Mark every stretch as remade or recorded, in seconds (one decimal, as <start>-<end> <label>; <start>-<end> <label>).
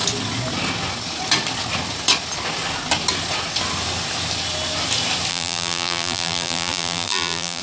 0.0-5.3 recorded; 5.3-7.6 remade